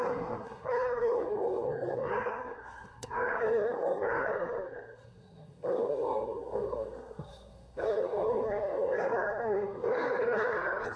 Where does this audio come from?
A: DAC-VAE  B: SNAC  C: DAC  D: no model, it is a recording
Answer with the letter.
B